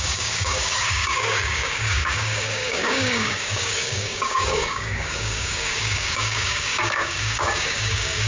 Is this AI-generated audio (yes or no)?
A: yes